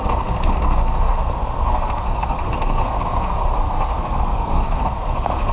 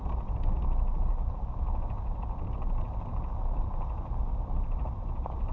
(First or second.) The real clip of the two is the second